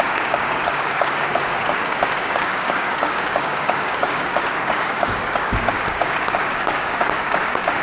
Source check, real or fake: fake